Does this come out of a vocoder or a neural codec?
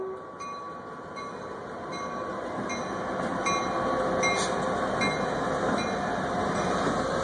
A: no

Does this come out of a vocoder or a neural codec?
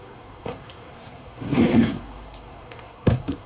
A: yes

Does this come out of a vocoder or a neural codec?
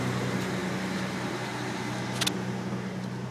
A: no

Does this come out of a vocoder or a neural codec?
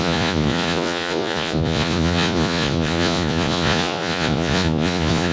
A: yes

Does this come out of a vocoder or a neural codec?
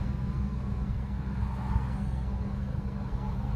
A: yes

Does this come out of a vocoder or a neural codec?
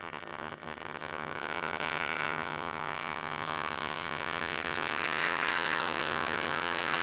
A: yes